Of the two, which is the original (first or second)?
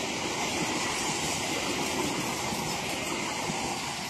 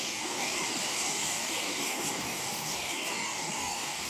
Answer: first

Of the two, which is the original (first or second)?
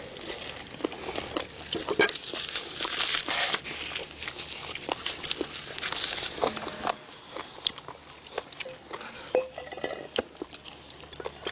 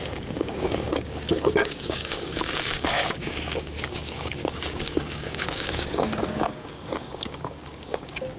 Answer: first